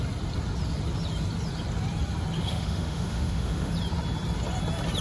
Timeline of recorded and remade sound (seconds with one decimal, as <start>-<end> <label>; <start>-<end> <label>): 0.0-2.4 recorded; 2.4-3.7 remade; 3.7-5.0 recorded